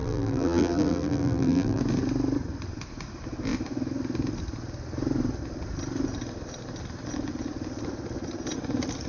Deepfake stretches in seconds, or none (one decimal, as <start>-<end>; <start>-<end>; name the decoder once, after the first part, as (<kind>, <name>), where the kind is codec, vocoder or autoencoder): 0.0-1.8 (vocoder, BigVGAN v2)